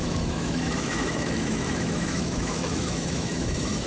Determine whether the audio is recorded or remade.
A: remade